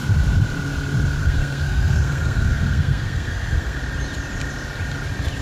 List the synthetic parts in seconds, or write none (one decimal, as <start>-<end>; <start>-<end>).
1.2-3.8